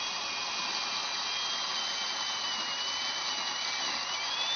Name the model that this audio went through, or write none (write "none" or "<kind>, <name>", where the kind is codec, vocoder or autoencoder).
none